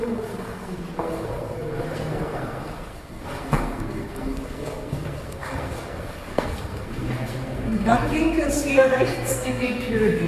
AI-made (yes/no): yes